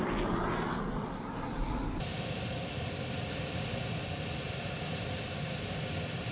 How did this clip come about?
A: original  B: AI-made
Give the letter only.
A